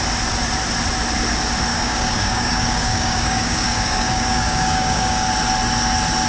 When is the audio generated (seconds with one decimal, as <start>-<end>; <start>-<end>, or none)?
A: 1.7-5.3